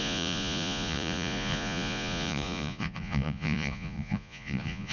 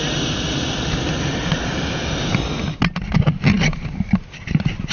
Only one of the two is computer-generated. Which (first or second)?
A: first